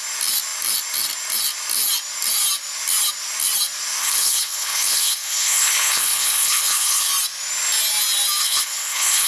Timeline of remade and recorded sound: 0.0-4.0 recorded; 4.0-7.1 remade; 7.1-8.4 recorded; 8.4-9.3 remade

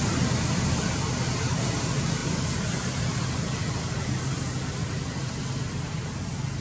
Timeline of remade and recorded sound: 0.0-6.6 recorded